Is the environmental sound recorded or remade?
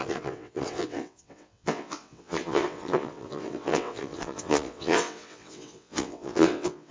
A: remade